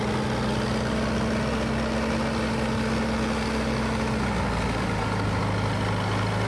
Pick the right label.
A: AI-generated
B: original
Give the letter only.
B